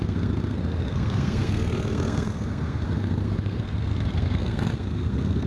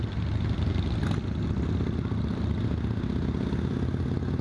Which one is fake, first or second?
first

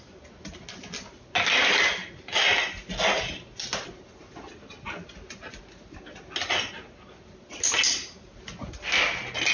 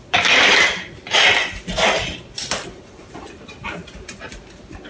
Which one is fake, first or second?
second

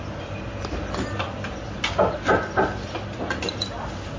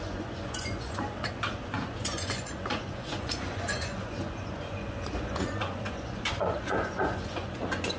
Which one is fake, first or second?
second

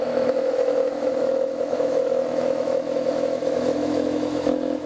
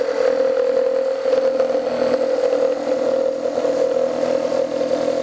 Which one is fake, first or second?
first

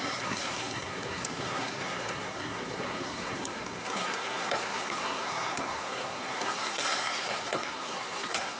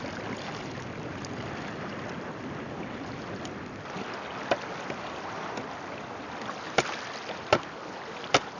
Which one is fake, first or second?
first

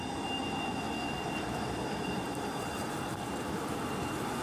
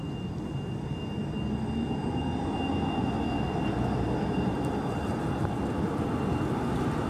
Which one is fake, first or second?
first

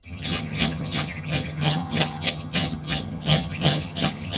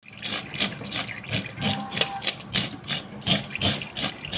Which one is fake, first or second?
first